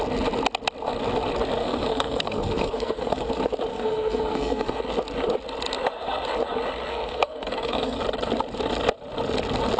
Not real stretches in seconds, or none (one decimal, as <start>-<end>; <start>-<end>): 1.6-3.3; 3.7-4.8; 6.9-8.0

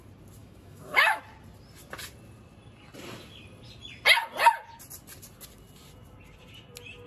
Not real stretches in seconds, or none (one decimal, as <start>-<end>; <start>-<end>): 0.4-1.2